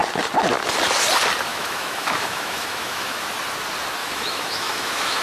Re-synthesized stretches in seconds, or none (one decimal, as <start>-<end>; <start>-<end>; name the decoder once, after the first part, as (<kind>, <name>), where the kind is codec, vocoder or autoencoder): 1.5-3.3 (autoencoder, DAC-VAE); 4.0-5.2